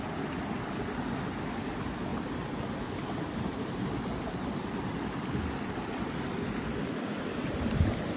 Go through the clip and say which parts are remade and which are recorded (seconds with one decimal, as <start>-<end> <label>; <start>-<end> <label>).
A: 0.0-8.2 recorded